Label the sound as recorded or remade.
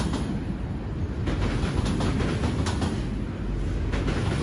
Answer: recorded